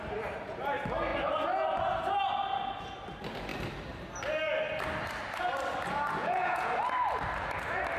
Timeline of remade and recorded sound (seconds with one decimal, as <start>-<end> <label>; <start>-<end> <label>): 0.0-6.2 recorded; 6.2-6.7 remade; 6.7-8.0 recorded